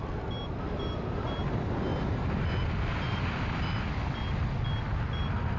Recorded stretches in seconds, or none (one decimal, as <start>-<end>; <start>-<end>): 0.0-5.6

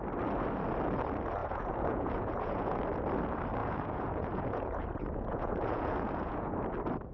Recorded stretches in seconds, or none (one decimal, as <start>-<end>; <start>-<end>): 0.0-1.4; 2.8-3.6; 6.5-7.1